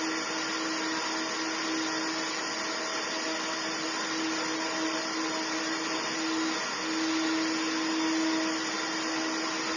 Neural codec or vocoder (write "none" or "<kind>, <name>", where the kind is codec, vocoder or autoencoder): none